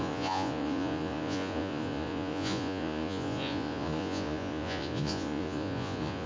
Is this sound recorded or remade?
remade